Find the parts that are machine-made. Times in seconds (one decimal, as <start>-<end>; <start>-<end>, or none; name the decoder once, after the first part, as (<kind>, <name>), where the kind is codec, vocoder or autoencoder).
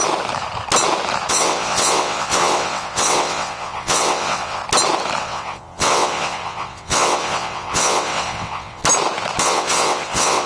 1.3-4.6 (vocoder, WaveNeXt); 5.2-8.8; 9.4-10.5